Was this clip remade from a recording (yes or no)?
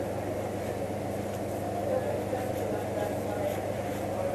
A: no